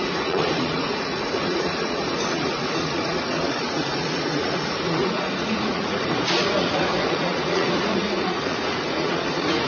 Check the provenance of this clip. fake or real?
fake